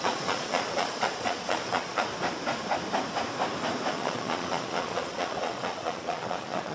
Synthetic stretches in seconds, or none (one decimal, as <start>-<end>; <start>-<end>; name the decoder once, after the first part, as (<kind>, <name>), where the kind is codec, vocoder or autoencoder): 0.0-2.1 (vocoder, Vocos); 3.9-6.7